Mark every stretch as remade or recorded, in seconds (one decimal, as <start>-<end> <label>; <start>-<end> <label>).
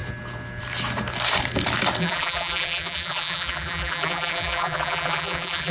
0.0-2.0 recorded; 2.0-5.7 remade